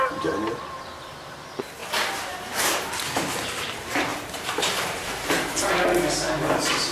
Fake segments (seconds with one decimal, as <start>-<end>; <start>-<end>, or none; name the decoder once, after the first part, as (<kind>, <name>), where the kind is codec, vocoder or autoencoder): 1.8-2.9 (vocoder, BigVGAN v2); 4.1-5.7